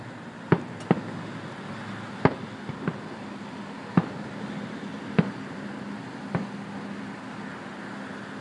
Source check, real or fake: real